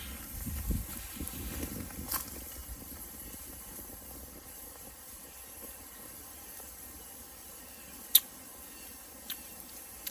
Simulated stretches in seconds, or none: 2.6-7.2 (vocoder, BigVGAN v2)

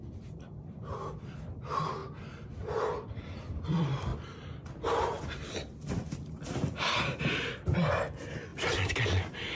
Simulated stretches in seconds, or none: 0.0-4.1 (vocoder, BigVGAN v2); 7.9-9.5

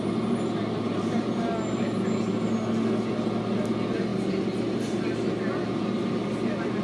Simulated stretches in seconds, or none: none

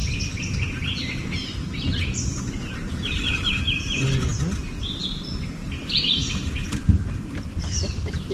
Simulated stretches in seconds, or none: 3.1-4.3 (vocoder, BigVGAN v2); 6.4-8.3